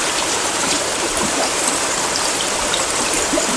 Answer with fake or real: fake